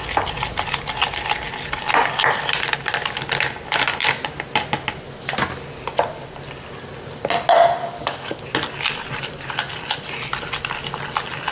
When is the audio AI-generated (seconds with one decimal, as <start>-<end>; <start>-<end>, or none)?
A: 7.8-8.4